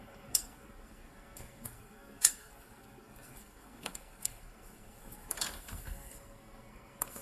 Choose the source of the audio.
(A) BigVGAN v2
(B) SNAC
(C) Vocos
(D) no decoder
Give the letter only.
B